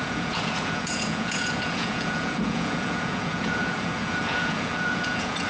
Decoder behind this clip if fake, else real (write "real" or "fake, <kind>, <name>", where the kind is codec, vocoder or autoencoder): fake, vocoder, Vocos